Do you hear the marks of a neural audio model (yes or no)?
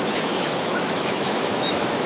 yes